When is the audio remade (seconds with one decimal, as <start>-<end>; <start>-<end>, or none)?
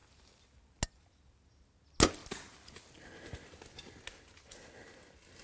none